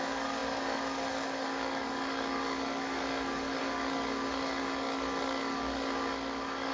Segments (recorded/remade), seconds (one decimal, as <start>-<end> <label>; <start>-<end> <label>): 0.0-6.7 remade